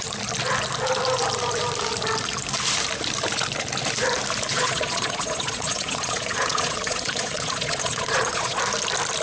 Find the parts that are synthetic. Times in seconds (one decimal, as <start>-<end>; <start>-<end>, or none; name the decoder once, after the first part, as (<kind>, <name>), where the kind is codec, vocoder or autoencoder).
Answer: 4.5-8.6 (vocoder, Vocos)